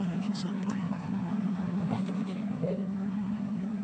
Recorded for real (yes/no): no